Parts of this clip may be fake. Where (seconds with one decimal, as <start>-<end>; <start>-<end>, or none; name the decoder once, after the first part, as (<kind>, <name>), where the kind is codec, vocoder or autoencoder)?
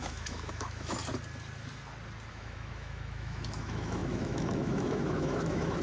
0.0-1.0 (autoencoder, DAC-VAE); 2.3-5.8